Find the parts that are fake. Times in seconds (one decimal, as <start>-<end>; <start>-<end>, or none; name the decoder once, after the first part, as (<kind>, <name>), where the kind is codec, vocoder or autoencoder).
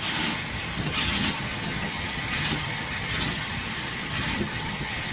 0.8-3.5 (vocoder, HiFi-GAN); 4.0-5.1